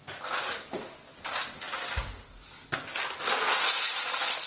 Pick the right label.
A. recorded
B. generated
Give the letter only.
A